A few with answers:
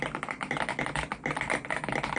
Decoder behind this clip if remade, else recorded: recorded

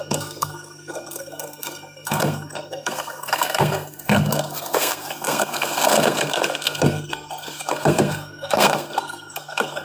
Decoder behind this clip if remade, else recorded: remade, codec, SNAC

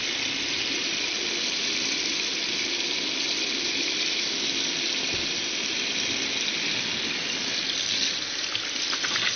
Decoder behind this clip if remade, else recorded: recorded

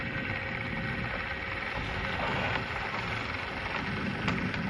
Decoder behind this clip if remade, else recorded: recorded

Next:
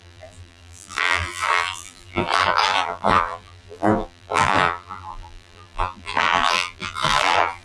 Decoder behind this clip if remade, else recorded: remade, vocoder, BigVGAN v2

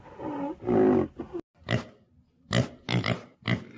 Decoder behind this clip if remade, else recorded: recorded